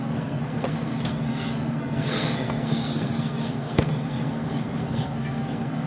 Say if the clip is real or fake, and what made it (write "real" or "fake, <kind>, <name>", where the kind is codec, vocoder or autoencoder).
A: fake, codec, SNAC